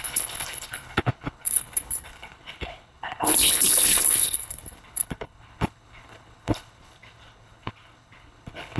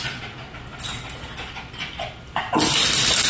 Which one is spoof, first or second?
first